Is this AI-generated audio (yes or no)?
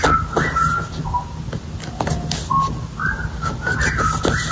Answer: no